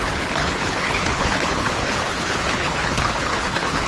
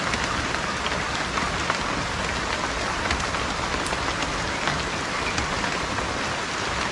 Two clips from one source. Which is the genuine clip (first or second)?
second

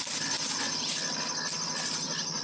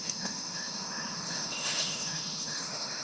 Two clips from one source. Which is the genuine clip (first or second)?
first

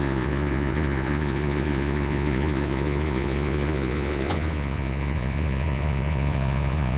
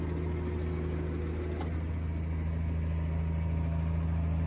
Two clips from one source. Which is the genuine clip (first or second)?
second